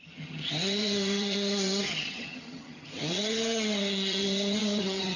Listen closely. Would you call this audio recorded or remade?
remade